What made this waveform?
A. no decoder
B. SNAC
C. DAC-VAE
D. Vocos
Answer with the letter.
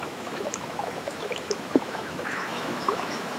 C